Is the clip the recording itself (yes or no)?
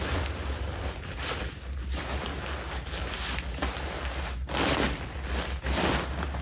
yes